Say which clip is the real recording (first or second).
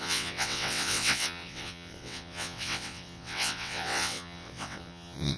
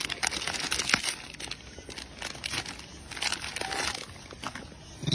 second